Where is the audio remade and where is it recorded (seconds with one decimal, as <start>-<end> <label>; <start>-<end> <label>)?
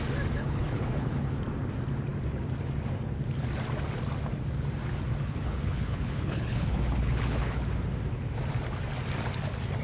0.0-0.4 recorded; 0.4-1.4 remade; 1.4-5.2 recorded; 5.2-7.7 remade; 7.7-9.8 recorded